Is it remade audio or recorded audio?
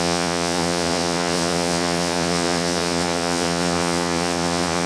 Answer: remade